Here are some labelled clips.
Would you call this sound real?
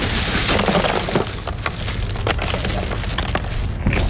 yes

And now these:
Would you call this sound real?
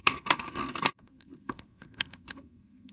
no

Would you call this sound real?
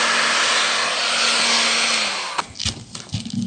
yes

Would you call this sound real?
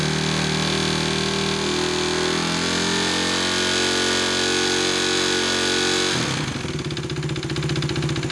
yes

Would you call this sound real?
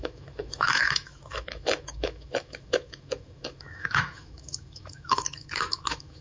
no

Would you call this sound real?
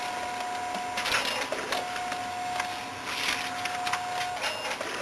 yes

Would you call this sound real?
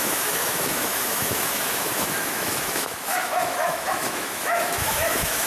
no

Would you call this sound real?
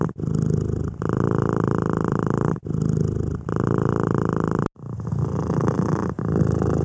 yes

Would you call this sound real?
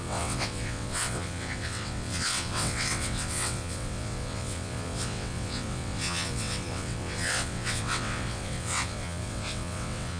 no